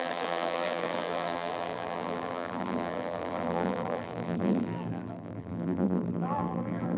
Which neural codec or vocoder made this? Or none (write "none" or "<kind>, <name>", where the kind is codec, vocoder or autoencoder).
vocoder, BigVGAN v2